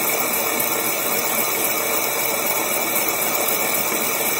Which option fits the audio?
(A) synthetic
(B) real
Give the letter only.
B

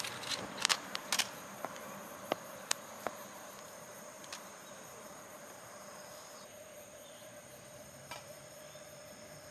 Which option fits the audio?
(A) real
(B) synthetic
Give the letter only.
B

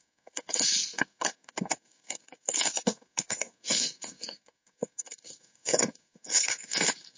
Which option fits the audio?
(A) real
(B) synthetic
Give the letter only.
B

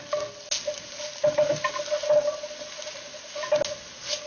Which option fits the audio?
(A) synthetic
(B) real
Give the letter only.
B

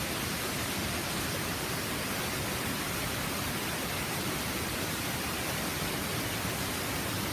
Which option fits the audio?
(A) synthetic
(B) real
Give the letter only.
B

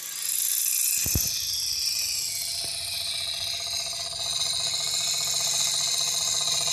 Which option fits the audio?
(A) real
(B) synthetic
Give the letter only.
A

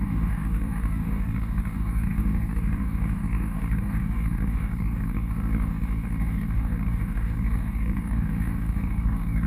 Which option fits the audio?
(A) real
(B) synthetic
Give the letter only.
B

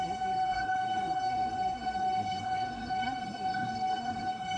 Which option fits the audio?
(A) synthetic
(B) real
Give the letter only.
A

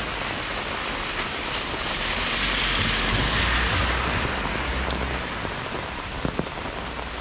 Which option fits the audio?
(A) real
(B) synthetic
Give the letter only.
A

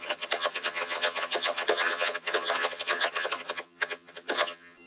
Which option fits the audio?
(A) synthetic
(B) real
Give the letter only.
A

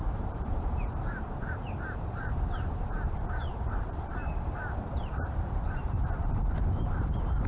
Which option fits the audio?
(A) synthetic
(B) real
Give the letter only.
A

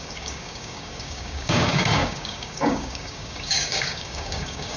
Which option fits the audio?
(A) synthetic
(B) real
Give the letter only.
A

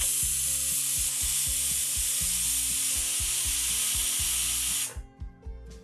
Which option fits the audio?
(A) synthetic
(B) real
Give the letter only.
B